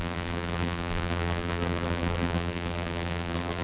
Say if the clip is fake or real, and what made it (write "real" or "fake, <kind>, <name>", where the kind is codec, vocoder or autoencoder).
fake, vocoder, BigVGAN v2